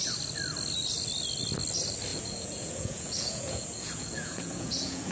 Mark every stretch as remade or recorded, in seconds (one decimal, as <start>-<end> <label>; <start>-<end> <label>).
0.0-2.1 recorded; 2.1-5.1 remade